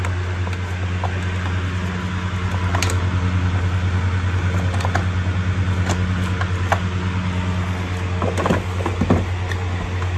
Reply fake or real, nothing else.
real